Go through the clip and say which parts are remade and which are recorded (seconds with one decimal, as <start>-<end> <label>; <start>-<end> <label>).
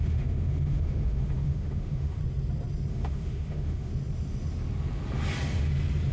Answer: 0.0-2.2 remade; 2.2-2.9 recorded; 2.9-3.9 remade; 3.9-6.1 recorded